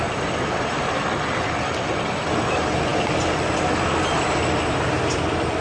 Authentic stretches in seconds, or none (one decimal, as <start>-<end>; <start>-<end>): 0.0-5.6